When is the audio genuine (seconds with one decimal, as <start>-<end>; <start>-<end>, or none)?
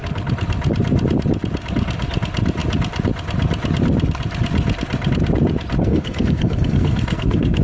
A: 0.0-5.8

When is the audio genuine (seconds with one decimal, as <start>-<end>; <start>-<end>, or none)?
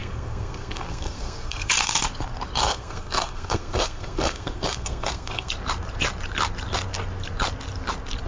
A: 1.7-2.6; 5.5-8.3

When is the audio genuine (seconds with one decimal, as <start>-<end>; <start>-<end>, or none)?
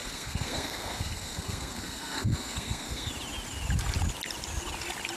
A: 3.1-5.2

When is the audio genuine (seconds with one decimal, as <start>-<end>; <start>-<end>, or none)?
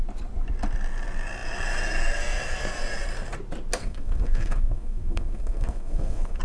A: 0.0-3.8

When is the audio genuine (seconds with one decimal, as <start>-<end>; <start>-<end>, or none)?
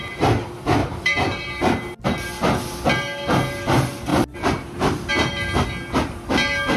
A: 0.0-0.8; 1.6-4.1; 5.1-6.8